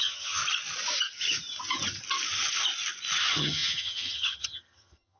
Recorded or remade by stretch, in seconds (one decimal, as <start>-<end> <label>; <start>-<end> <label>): 0.0-0.4 remade; 0.4-3.2 recorded; 3.2-5.2 remade